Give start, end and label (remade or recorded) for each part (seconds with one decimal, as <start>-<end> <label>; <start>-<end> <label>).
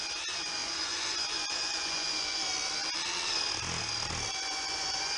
0.0-2.4 remade; 2.4-4.3 recorded; 4.3-5.2 remade